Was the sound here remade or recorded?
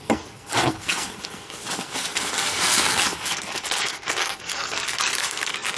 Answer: remade